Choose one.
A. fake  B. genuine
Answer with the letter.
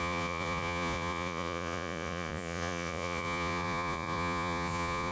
A